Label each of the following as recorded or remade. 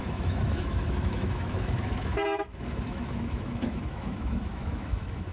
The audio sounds remade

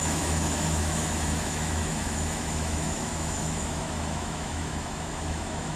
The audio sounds remade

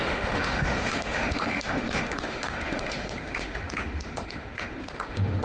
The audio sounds remade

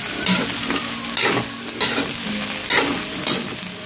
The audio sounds recorded